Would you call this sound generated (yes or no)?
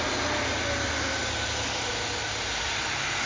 no